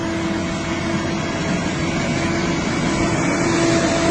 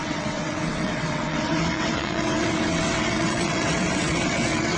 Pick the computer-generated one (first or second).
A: second